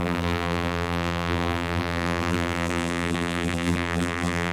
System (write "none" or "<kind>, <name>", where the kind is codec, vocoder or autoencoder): vocoder, BigVGAN v2